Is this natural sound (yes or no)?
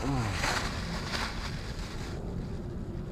yes